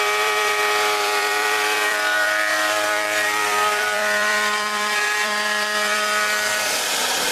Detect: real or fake fake